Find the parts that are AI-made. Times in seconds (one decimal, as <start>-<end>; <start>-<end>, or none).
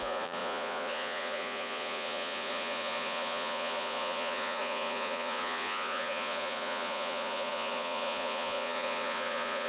0.0-9.7